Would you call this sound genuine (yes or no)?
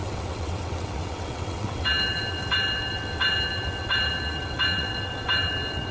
no